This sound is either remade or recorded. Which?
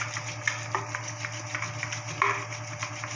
recorded